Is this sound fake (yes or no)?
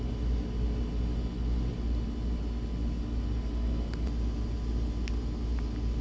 no